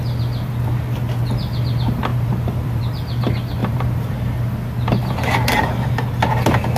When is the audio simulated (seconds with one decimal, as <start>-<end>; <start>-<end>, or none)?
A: 2.1-2.8; 3.6-5.7

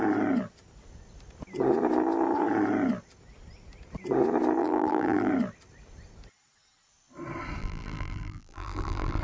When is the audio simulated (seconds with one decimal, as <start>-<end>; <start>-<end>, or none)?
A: 4.6-5.3; 7.6-9.2

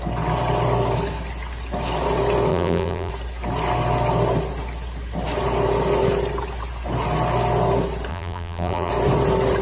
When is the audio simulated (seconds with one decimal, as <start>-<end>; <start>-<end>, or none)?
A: 2.5-3.1; 8.1-8.9

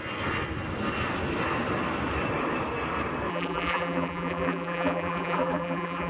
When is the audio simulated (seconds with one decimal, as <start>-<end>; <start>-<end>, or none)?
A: 3.3-6.1